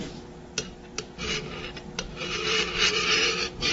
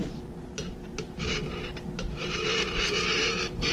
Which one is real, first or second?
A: first